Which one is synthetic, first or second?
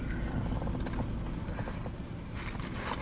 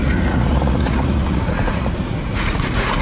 second